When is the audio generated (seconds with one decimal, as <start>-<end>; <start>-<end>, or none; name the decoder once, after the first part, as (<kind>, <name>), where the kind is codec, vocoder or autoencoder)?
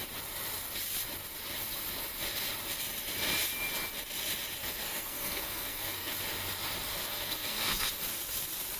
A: 4.6-6.1 (codec, SNAC); 6.9-7.9